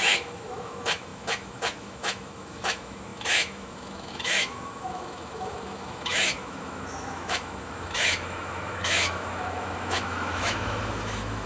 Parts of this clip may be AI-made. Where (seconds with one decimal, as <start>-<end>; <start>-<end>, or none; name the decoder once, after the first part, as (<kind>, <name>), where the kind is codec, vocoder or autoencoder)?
0.0-11.5 (autoencoder, DAC-VAE)